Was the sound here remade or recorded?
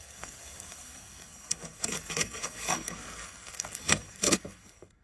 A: remade